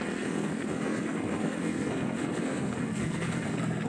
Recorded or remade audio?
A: remade